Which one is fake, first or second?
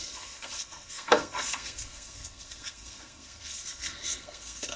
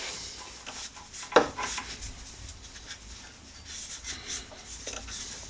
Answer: first